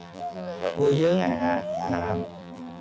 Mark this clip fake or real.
fake